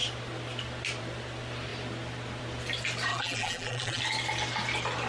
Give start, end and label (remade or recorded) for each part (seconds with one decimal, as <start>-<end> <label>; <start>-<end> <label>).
0.0-3.1 recorded; 3.1-4.0 remade; 4.0-5.1 recorded